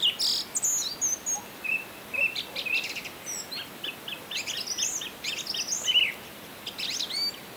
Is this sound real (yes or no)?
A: yes